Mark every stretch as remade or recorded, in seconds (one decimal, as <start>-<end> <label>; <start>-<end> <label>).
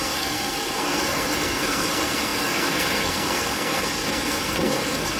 0.0-5.2 remade